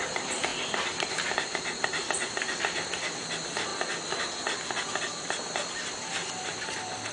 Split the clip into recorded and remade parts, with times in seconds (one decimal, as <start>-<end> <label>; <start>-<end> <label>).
0.0-7.1 recorded